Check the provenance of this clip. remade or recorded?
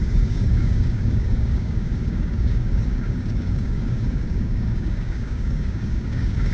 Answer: remade